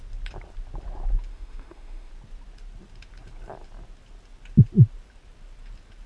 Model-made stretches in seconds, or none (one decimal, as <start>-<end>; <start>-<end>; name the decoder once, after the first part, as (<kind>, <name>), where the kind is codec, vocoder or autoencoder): 1.3-2.1 (autoencoder, DAC-VAE)